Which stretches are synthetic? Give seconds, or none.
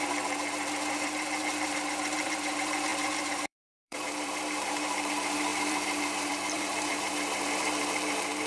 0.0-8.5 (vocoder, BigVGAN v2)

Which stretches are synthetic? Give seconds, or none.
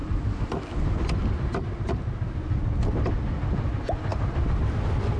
none